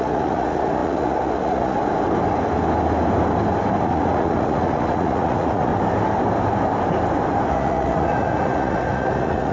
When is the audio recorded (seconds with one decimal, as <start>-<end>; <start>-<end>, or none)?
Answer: 1.8-3.8; 5.7-7.5